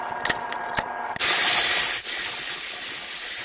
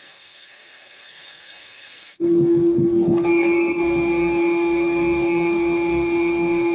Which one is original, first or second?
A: first